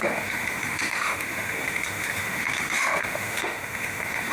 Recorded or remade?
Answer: remade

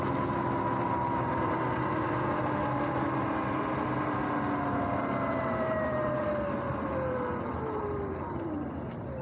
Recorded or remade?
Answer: recorded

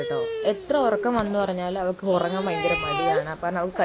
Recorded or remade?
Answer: recorded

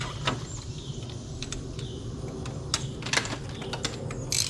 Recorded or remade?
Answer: recorded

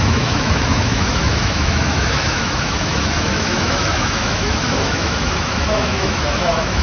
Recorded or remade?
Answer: remade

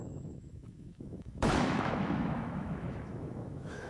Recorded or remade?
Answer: remade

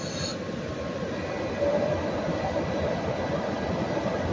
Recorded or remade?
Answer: recorded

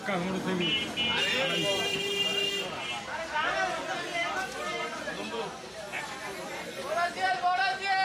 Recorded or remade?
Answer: recorded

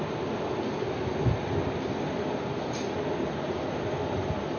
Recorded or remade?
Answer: recorded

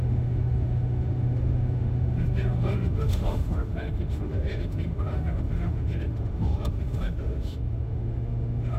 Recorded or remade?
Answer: remade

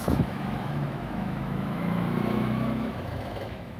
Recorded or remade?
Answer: remade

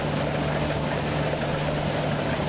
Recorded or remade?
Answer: recorded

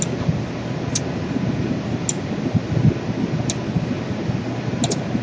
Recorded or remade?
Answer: recorded